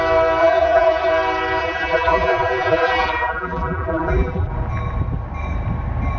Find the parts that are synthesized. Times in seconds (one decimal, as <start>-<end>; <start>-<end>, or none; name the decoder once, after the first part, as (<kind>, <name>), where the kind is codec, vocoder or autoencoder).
0.4-1.1 (vocoder, BigVGAN v2); 1.6-4.5